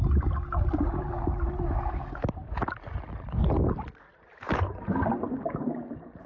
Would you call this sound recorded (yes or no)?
yes